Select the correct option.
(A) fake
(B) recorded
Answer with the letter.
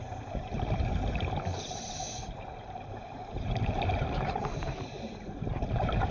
A